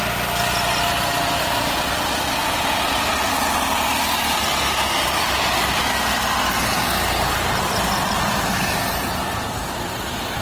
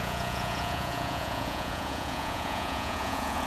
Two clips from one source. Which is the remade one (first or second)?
second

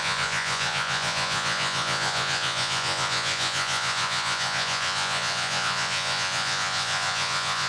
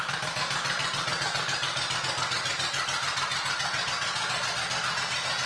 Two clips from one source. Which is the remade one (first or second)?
first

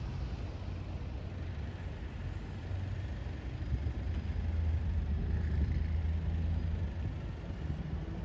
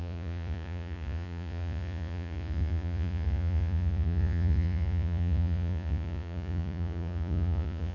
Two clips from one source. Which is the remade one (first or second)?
second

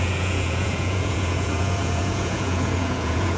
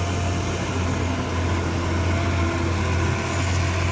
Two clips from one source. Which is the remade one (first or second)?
first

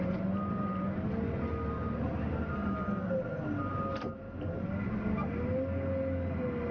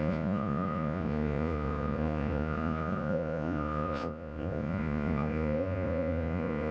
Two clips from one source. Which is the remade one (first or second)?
second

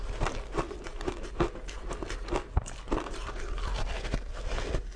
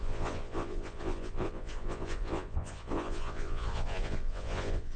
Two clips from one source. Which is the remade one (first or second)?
second